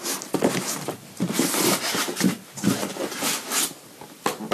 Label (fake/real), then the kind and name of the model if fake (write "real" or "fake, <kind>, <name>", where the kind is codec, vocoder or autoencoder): real